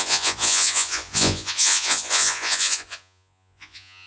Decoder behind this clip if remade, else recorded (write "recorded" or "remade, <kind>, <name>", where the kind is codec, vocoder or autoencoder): remade, vocoder, Vocos